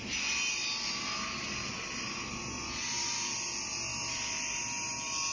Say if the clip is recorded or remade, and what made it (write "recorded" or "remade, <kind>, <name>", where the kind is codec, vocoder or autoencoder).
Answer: recorded